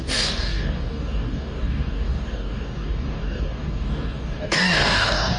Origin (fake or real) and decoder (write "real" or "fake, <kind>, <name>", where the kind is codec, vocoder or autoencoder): fake, codec, DAC